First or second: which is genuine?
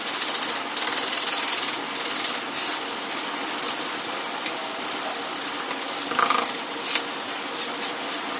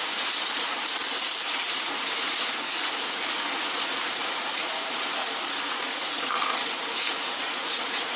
first